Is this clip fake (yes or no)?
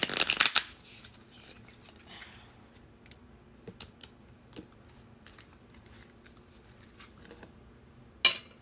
no